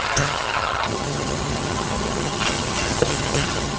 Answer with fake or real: fake